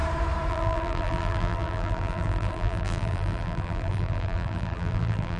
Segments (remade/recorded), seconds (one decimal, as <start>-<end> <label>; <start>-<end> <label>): 0.0-0.5 recorded; 0.5-5.4 remade